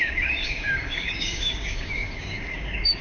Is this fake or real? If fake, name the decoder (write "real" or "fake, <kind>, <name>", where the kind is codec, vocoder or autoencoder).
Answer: fake, codec, DAC